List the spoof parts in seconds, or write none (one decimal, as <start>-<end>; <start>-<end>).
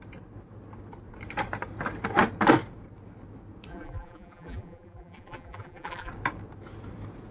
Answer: 3.7-6.1